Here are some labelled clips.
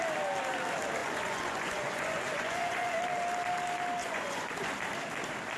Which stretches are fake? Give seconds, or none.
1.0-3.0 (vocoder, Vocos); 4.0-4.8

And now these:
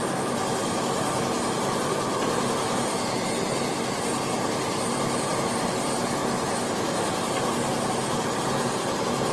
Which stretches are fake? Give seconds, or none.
none

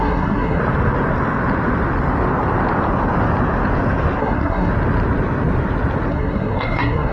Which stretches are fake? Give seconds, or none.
0.0-0.6 (codec, SNAC); 4.2-4.7; 6.1-7.1

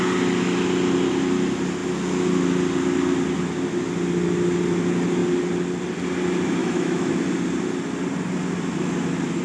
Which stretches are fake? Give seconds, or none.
6.6-7.1 (autoencoder, DAC-VAE)

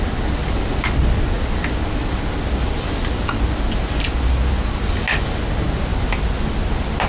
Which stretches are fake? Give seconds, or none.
none

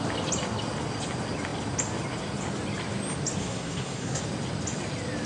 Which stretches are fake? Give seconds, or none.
3.4-4.2 (codec, SNAC)

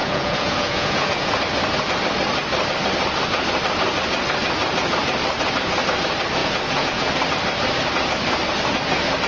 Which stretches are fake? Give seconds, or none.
0.0-1.4 (vocoder, Vocos); 6.4-7.1